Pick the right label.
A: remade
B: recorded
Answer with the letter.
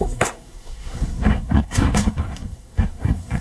A